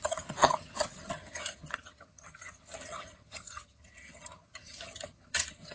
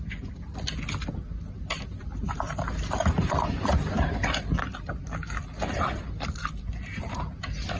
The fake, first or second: first